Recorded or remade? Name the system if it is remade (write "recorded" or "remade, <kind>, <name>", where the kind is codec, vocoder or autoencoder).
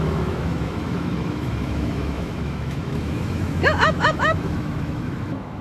remade, autoencoder, DAC-VAE